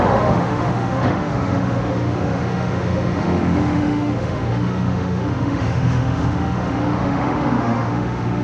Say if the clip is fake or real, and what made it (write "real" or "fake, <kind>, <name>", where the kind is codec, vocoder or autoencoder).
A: fake, autoencoder, DAC-VAE